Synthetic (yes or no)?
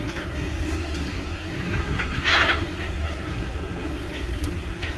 yes